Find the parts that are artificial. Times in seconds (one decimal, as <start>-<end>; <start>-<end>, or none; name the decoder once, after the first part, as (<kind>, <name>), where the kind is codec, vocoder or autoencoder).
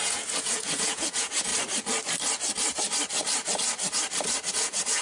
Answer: 0.0-1.5 (vocoder, Vocos); 4.5-5.0